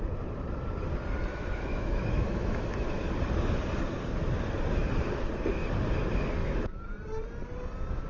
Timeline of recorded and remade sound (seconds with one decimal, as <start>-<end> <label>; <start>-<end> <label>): 0.0-1.3 recorded; 1.3-3.0 remade; 3.0-6.4 recorded; 6.4-6.9 remade; 6.9-8.1 recorded